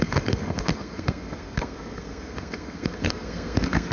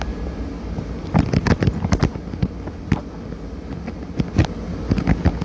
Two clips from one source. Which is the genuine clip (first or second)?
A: second